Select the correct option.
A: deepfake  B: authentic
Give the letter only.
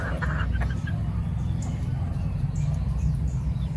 B